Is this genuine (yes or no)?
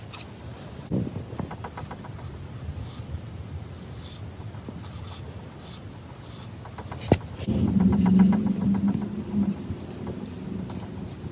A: yes